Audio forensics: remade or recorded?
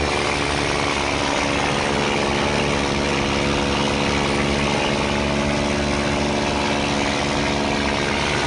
recorded